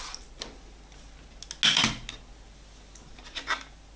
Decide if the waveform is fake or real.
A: real